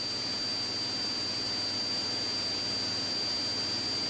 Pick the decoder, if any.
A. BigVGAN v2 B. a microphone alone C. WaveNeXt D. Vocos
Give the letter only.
B